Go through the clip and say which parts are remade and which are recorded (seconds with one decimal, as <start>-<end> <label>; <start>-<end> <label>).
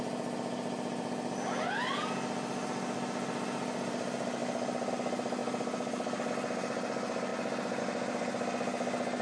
0.0-9.2 recorded